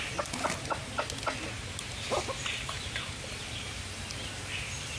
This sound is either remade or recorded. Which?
recorded